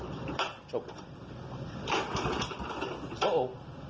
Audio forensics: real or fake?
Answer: real